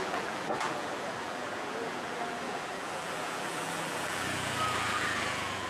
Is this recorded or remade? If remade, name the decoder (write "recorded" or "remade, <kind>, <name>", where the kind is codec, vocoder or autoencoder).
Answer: remade, vocoder, BigVGAN v2